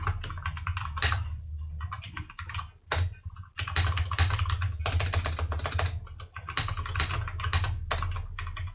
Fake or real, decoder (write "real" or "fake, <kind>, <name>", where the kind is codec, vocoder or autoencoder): real